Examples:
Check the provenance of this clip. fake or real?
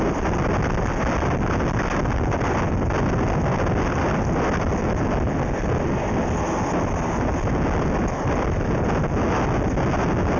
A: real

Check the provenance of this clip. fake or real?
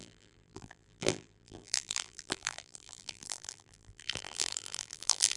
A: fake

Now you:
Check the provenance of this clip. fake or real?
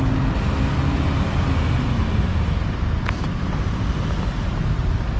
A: real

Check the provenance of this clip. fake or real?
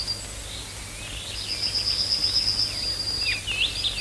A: real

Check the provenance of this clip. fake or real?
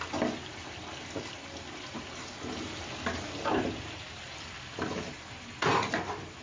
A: real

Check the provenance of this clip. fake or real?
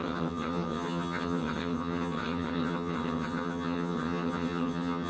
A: fake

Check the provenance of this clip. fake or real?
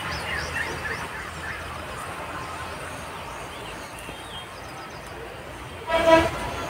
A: real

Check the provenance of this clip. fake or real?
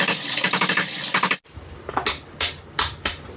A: real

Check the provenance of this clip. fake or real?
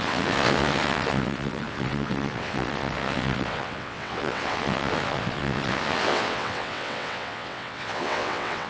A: fake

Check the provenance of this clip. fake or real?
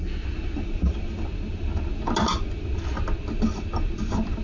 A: real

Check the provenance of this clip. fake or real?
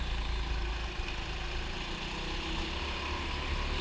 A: real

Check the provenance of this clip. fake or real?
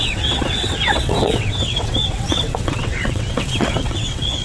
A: fake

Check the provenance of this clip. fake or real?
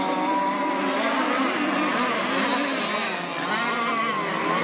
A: real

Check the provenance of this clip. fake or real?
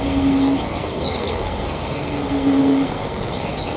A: fake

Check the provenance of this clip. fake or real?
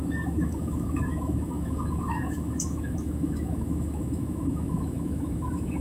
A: fake